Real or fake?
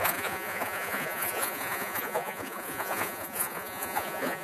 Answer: fake